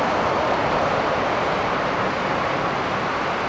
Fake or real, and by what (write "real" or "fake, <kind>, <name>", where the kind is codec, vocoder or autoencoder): real